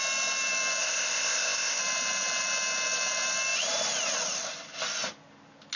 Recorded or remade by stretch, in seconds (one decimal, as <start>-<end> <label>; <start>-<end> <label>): 0.0-0.8 recorded; 0.8-1.8 remade; 1.8-5.8 recorded